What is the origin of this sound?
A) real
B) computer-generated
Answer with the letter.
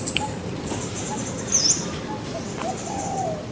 A